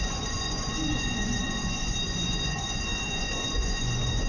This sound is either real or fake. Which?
fake